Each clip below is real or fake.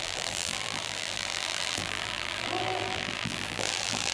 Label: fake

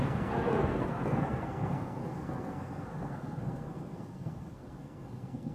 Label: fake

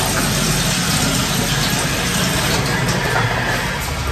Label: real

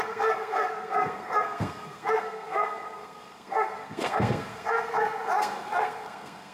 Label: fake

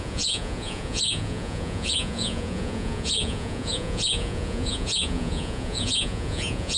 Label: fake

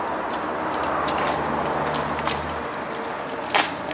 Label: real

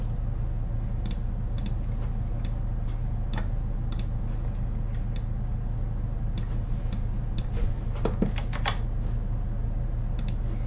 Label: real